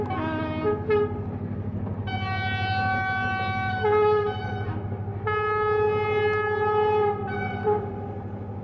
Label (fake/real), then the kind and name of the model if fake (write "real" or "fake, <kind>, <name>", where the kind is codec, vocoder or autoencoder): real